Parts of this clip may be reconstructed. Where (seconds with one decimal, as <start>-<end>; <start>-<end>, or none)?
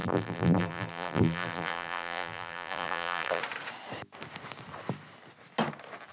0.0-3.4